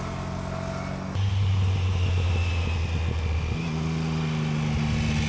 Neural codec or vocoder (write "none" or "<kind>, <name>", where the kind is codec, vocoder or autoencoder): none